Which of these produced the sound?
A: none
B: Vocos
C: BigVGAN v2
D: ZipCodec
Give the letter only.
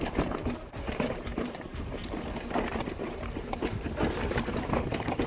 C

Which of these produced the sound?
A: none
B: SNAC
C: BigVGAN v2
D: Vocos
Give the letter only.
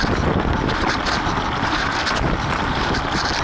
A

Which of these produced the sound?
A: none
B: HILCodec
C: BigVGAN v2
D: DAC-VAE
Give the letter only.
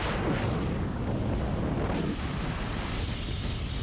A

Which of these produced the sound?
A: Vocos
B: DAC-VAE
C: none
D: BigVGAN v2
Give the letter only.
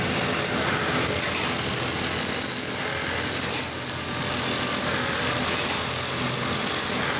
C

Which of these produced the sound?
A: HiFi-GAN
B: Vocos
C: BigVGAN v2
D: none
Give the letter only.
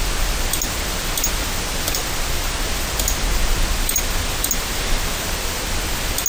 D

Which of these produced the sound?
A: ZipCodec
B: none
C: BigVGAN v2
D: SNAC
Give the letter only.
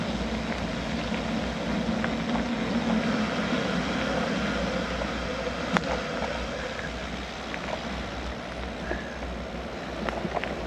B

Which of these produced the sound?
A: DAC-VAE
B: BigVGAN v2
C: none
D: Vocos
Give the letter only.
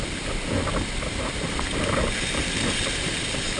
C